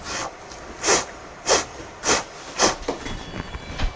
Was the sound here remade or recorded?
recorded